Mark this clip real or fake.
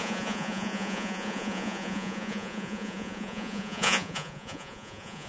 fake